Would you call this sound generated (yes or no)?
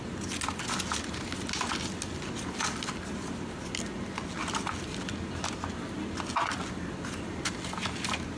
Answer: no